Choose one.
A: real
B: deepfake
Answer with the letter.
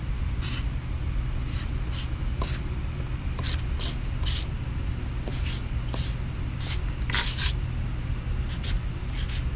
A